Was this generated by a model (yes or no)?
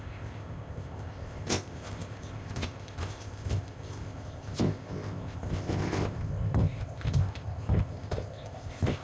yes